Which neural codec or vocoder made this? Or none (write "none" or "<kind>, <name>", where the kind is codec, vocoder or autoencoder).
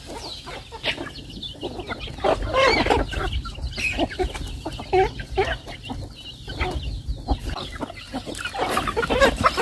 none